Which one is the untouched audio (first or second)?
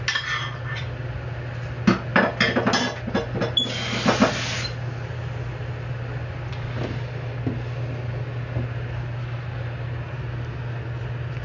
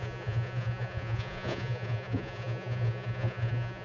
first